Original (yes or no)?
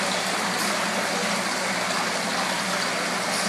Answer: yes